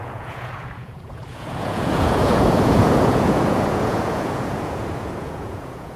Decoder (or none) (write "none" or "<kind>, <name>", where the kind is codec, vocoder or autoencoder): vocoder, Vocos